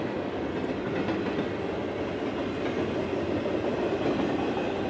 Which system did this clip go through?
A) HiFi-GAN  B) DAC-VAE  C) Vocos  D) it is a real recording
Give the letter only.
D